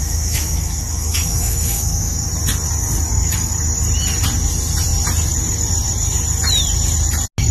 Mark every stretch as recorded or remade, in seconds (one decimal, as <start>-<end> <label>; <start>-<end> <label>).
0.0-2.3 remade; 2.3-7.5 recorded